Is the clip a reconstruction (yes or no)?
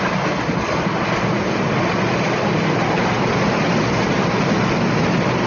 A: no